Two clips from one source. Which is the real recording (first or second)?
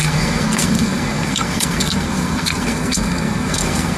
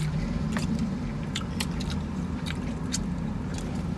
second